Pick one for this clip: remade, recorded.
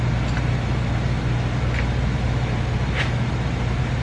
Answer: recorded